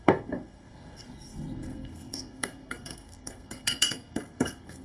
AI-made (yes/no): yes